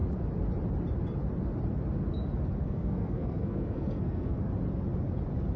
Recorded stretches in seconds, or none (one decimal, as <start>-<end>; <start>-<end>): 0.0-2.6; 4.5-5.6